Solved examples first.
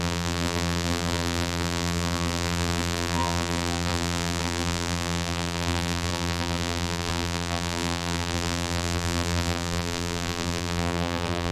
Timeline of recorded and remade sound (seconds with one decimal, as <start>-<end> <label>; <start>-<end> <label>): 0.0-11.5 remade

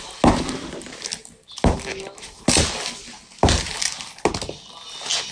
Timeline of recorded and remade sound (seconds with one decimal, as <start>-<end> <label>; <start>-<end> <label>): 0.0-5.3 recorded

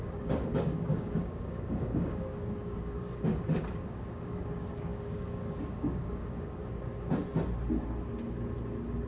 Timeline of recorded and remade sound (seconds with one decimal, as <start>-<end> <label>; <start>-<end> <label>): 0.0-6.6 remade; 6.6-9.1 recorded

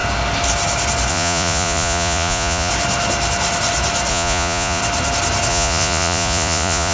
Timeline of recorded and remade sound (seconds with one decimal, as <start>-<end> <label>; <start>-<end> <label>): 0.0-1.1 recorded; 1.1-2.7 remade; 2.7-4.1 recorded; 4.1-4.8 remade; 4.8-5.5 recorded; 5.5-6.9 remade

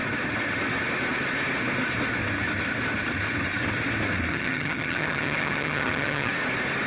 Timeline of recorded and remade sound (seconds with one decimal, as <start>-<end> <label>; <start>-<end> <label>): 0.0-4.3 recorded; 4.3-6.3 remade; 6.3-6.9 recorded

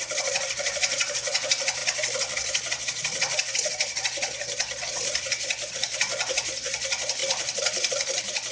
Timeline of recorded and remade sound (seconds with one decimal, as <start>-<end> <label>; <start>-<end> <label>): 0.0-8.5 recorded

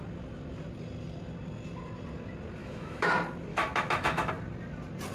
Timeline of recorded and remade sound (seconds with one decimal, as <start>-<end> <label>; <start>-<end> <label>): 0.0-2.6 recorded; 2.6-3.1 remade; 3.1-3.5 recorded; 3.5-4.3 remade; 4.3-5.1 recorded

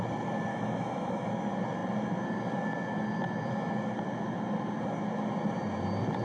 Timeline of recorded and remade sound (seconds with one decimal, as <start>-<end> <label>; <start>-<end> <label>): 0.0-0.5 recorded; 0.5-1.3 remade; 1.3-6.2 recorded